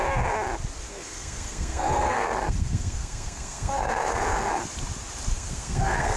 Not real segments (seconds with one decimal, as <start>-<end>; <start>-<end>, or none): 0.9-4.6; 5.3-6.2